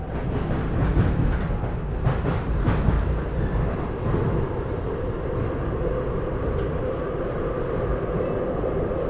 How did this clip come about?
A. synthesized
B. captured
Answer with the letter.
B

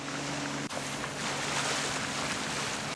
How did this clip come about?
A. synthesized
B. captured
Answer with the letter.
B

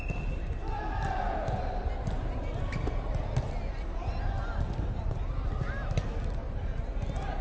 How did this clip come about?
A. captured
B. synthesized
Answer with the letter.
A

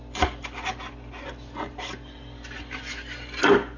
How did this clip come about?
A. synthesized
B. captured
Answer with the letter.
B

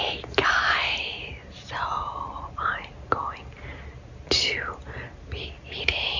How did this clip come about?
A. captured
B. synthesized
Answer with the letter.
A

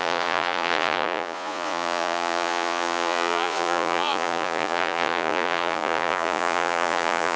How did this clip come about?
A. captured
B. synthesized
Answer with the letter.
B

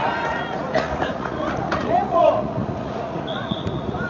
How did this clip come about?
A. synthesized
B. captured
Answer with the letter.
A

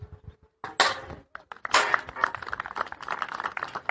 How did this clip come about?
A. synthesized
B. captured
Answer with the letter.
B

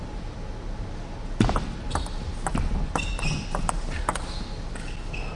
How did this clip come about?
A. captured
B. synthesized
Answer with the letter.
A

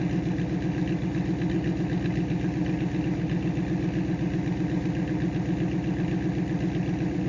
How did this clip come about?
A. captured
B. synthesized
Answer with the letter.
A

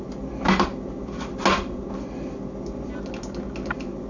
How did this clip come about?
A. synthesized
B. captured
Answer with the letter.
B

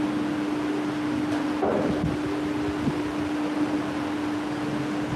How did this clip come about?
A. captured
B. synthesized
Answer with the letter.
A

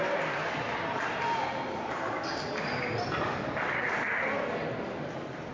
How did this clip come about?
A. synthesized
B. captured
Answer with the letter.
B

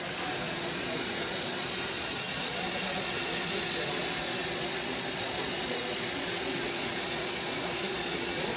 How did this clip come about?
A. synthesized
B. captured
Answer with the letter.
A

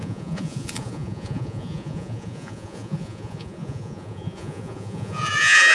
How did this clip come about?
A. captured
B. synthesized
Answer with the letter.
B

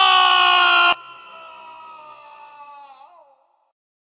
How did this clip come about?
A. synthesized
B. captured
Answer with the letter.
B